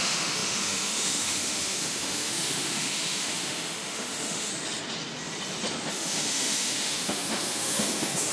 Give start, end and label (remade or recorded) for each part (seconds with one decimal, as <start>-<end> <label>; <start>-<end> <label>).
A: 0.0-4.5 remade; 4.5-5.9 recorded; 5.9-8.3 remade